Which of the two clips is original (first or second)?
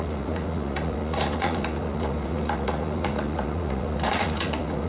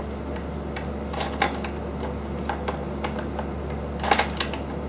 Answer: second